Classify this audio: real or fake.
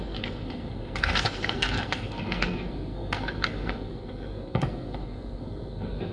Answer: fake